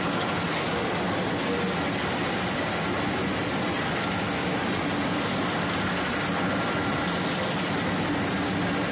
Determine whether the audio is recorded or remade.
recorded